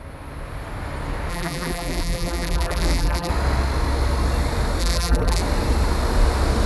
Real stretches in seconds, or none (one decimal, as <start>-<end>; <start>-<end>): 0.0-1.3; 3.3-4.8; 5.4-6.7